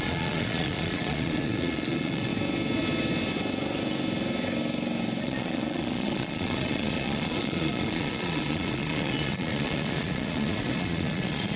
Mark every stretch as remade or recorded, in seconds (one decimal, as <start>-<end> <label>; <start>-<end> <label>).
0.0-2.3 remade; 2.3-5.2 recorded; 5.2-11.6 remade